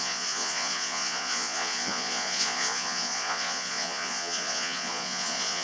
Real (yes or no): no